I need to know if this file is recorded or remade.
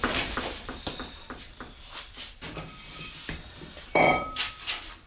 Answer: remade